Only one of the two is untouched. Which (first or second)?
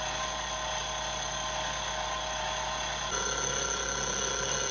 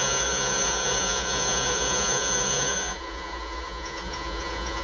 first